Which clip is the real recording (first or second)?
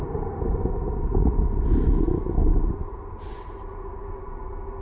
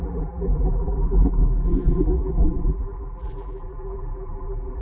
first